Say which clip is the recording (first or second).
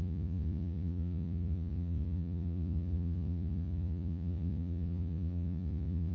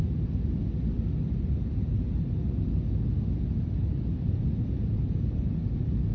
second